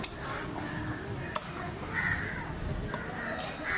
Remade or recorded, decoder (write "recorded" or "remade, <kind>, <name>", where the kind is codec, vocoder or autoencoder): recorded